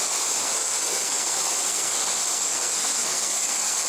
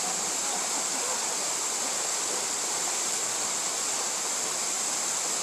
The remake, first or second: first